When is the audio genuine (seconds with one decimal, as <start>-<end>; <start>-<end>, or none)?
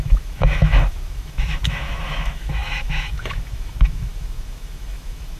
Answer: none